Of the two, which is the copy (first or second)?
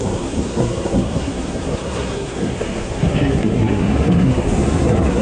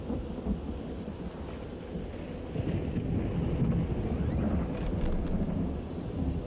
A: first